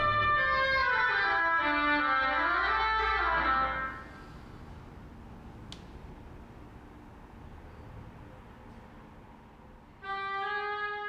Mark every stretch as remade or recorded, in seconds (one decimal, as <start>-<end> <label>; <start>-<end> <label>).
0.0-0.8 recorded; 0.8-1.6 remade; 1.6-11.1 recorded